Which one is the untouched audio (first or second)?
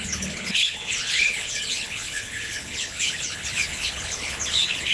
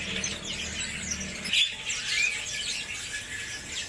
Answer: second